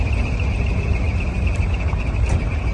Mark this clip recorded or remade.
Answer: recorded